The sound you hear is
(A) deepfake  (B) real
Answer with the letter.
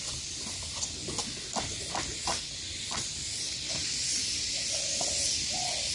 B